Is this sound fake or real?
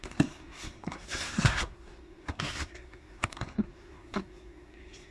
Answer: fake